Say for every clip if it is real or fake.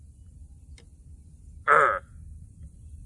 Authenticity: real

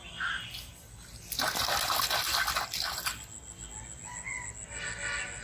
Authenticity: real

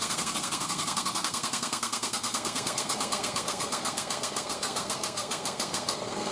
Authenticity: fake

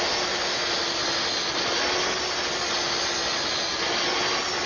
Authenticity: real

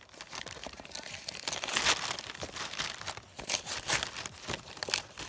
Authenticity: real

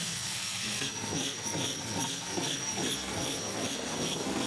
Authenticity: fake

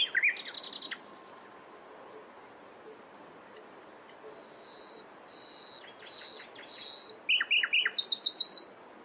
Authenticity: real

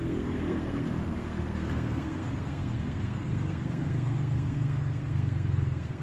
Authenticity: fake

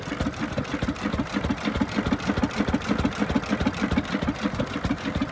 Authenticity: real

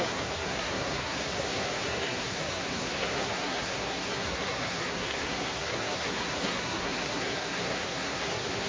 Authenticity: fake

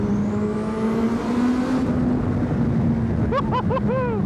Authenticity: real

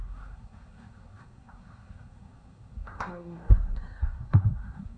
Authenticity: fake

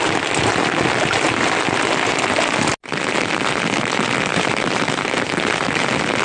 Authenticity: real